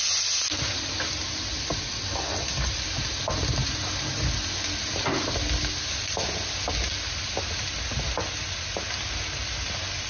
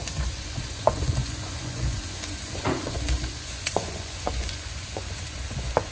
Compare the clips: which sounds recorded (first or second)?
first